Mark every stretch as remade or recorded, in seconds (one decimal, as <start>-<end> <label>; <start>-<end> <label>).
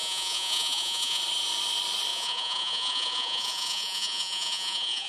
0.0-1.2 remade; 1.2-2.1 recorded; 2.1-5.1 remade